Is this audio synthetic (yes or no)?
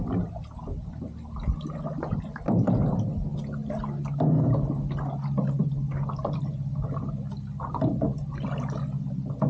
no